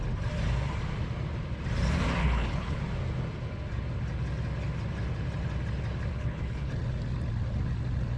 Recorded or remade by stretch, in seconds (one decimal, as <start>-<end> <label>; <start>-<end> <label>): 0.0-2.2 recorded; 2.2-2.8 remade; 2.8-6.1 recorded; 6.1-6.7 remade; 6.7-8.2 recorded